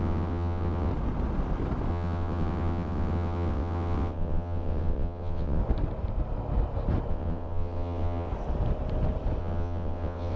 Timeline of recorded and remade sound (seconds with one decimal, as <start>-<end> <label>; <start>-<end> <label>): 0.0-0.9 remade; 0.9-1.9 recorded; 1.9-5.6 remade; 5.6-7.1 recorded; 7.1-8.3 remade; 8.3-9.4 recorded; 9.4-10.4 remade